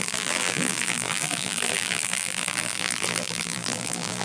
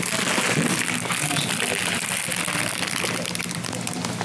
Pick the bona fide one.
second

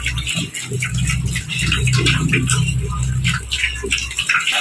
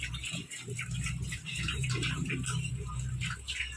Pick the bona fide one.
first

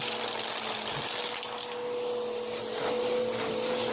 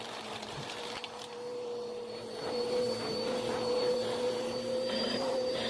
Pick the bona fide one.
first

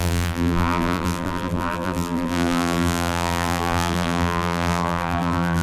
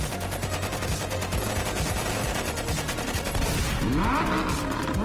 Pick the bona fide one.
second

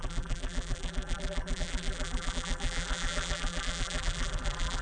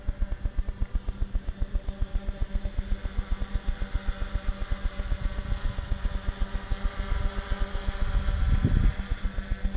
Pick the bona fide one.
second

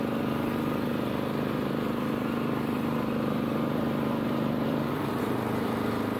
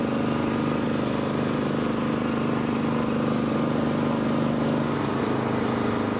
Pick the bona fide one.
second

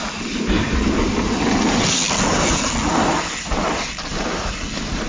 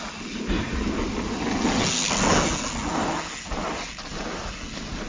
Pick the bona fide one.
second